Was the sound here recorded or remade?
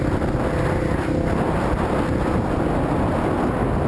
recorded